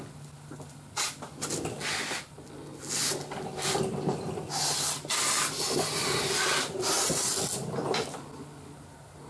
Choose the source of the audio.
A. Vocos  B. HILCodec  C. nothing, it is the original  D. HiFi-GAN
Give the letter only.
C